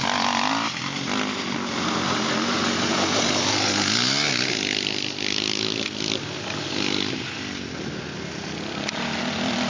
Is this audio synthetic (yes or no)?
no